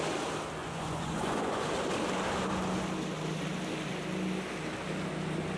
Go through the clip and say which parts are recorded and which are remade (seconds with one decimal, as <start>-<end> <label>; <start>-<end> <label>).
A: 0.0-0.6 recorded; 0.6-1.7 remade; 1.7-5.6 recorded